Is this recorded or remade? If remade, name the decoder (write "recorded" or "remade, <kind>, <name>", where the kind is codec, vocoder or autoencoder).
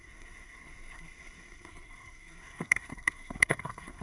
remade, codec, SNAC